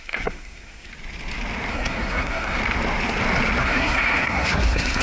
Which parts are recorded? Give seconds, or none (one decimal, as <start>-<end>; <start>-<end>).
0.9-1.7; 2.6-3.6